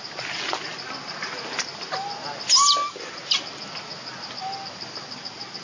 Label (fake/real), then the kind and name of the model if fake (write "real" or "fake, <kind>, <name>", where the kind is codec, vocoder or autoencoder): real